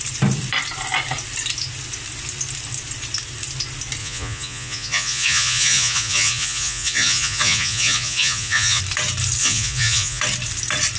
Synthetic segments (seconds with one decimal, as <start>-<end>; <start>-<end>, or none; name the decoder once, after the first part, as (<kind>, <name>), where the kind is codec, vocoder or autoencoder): 4.0-8.8 (vocoder, Vocos); 9.4-10.2